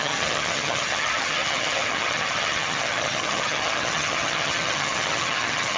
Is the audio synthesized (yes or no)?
yes